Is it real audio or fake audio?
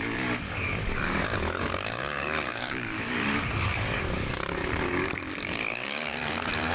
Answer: fake